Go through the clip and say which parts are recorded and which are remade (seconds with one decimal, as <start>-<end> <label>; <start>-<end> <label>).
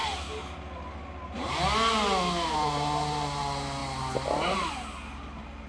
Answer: 0.0-5.7 recorded